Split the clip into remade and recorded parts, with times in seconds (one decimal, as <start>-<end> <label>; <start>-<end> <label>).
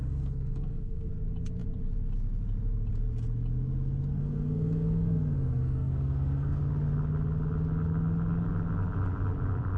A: 0.0-1.1 remade; 1.1-4.1 recorded; 4.1-6.6 remade; 6.6-9.8 recorded